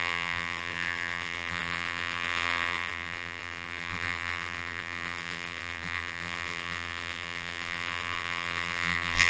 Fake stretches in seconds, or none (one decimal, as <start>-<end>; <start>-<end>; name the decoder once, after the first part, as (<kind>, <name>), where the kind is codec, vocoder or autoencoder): 0.0-9.3 (vocoder, BigVGAN v2)

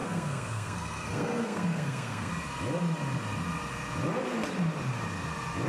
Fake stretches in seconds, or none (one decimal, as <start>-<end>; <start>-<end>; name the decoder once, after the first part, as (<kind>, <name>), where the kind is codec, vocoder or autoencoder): 0.0-2.3 (codec, SNAC)